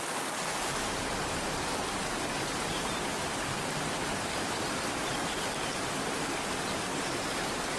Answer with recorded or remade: recorded